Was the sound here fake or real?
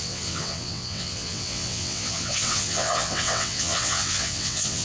fake